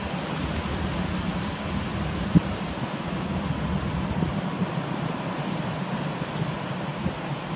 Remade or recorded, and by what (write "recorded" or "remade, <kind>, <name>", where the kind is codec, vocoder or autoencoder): recorded